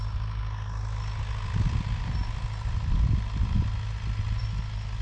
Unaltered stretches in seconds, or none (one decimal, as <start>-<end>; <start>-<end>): 0.0-5.0